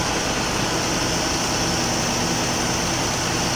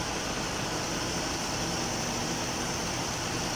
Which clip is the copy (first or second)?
second